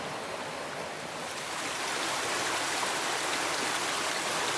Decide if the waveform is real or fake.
real